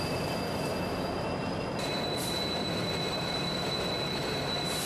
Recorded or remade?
recorded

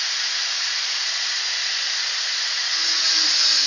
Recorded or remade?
remade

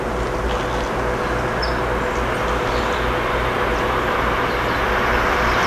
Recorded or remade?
recorded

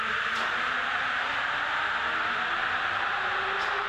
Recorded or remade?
recorded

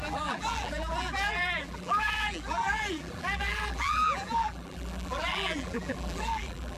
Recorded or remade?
remade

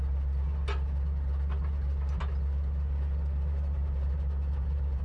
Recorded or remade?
recorded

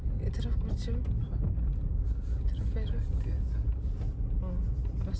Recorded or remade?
recorded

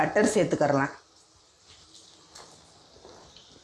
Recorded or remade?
remade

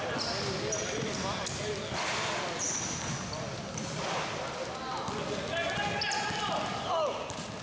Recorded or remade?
recorded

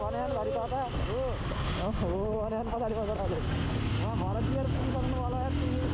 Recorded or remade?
recorded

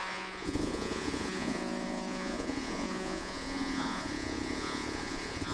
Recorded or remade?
remade